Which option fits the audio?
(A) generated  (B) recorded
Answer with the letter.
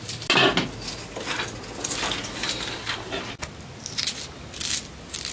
B